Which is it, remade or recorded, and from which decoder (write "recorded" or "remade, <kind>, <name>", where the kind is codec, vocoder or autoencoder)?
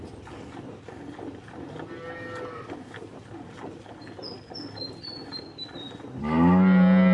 recorded